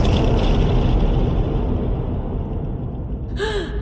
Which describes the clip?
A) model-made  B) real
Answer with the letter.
B